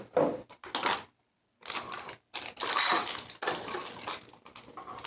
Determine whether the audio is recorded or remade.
recorded